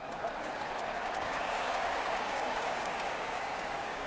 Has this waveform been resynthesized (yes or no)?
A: yes